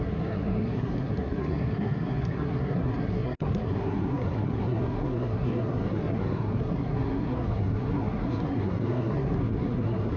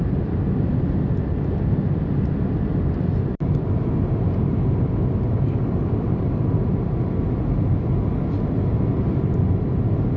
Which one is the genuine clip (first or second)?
second